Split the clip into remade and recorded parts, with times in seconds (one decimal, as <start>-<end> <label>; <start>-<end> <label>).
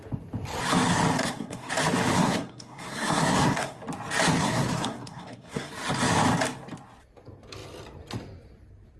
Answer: 0.0-1.2 recorded; 1.2-1.7 remade; 1.7-2.2 recorded; 2.2-3.8 remade; 3.8-4.4 recorded; 4.4-5.7 remade; 5.7-9.0 recorded